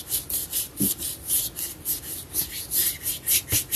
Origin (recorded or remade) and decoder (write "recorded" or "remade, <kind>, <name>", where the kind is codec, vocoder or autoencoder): recorded